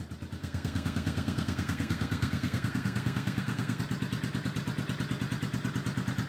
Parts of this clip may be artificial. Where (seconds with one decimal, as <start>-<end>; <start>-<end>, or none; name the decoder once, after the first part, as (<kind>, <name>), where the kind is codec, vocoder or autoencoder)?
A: 0.4-3.8 (codec, SNAC)